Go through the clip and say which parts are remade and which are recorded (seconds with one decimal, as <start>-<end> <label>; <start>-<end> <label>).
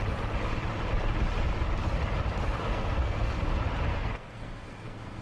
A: 0.0-2.7 recorded; 2.7-3.4 remade; 3.4-3.9 recorded; 3.9-5.2 remade